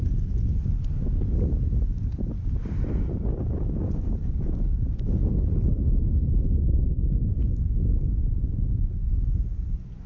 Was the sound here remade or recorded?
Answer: recorded